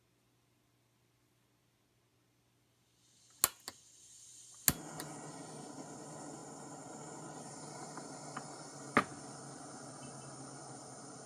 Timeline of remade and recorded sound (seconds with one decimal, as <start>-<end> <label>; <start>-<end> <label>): 0.0-11.3 recorded